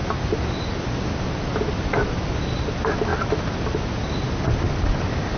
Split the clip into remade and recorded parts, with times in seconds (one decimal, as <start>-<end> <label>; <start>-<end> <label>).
0.0-5.4 recorded